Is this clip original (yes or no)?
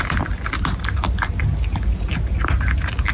yes